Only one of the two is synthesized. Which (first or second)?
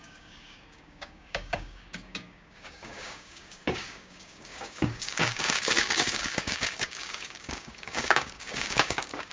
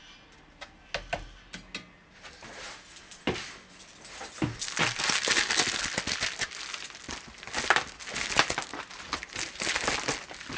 first